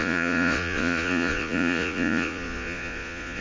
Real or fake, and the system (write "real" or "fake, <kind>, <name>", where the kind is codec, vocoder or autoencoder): fake, vocoder, Vocos